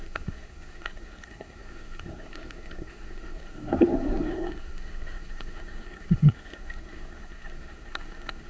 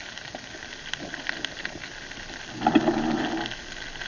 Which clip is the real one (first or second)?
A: second